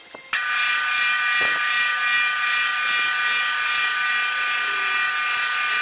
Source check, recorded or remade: recorded